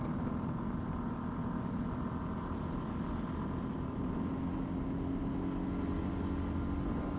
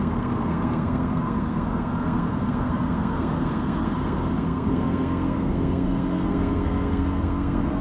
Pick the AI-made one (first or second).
second